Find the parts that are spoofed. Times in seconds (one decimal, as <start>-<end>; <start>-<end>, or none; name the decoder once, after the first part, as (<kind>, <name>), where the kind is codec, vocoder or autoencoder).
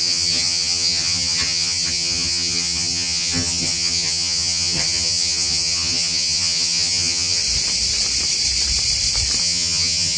0.0-7.4 (vocoder, HiFi-GAN); 9.4-10.2